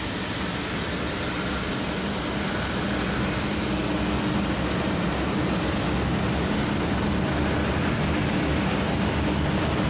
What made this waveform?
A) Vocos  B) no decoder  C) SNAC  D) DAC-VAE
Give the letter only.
B